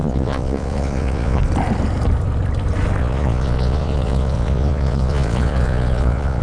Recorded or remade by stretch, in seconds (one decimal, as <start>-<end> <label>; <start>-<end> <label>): 0.0-1.4 remade; 1.4-3.0 recorded; 3.0-6.4 remade